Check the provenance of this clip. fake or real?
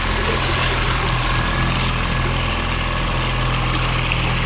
real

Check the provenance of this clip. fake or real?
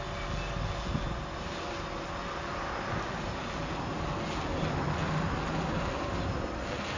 real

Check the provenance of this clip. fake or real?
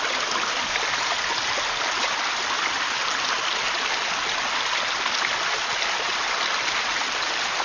real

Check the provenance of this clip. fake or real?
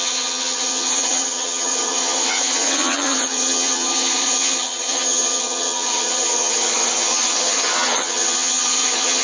fake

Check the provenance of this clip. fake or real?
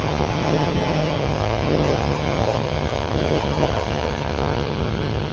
fake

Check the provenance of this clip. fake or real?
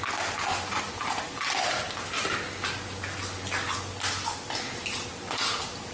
real